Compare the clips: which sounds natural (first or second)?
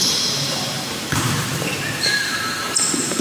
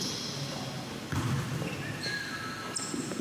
second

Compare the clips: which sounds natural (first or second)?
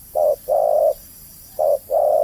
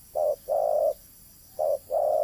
second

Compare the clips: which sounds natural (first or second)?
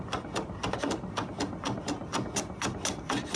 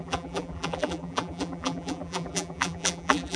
first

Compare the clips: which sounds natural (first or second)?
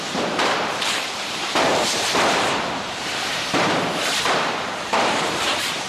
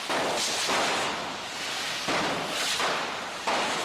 second